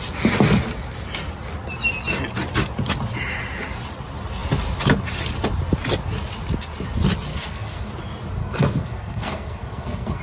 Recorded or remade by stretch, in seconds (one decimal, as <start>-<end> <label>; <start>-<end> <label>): 0.0-7.3 recorded; 7.3-7.9 remade; 7.9-8.4 recorded; 8.4-10.2 remade